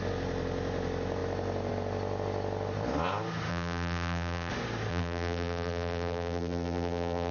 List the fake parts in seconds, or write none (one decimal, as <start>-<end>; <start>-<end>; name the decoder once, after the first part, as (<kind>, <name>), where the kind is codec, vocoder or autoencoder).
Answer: 3.5-4.5 (vocoder, BigVGAN v2); 4.9-7.3